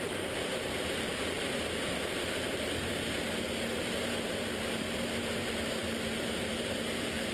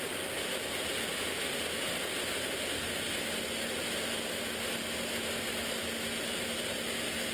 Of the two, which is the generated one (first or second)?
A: first